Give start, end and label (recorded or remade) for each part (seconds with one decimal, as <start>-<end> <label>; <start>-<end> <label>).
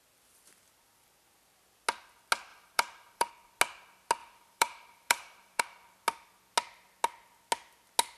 0.0-2.5 recorded; 2.5-3.3 remade; 3.3-4.2 recorded; 4.2-5.6 remade; 5.6-8.2 recorded